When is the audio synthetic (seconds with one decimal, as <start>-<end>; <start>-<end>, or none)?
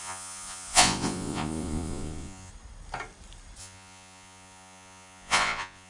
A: 0.0-2.5; 3.6-5.9